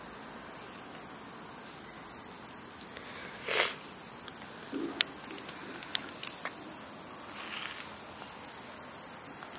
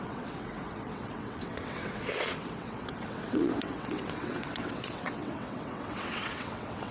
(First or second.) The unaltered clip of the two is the first